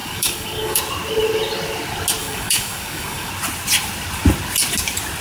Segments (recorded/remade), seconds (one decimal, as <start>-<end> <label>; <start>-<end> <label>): 0.0-0.8 remade; 0.8-2.2 recorded; 2.2-3.3 remade; 3.3-5.2 recorded